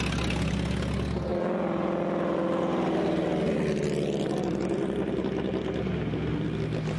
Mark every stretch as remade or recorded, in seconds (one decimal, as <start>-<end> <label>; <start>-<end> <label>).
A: 0.0-7.0 recorded